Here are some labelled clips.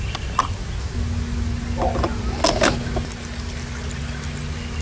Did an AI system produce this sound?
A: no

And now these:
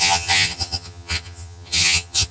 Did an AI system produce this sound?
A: yes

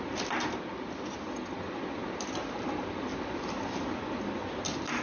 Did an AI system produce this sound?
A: no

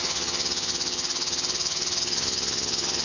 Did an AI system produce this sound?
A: yes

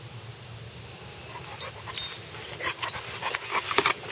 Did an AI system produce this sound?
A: no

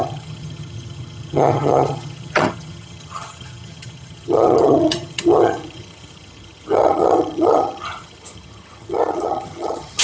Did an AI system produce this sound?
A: yes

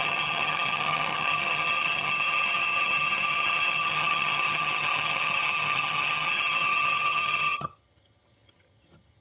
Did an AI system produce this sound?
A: yes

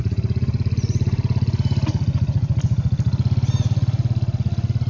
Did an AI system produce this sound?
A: no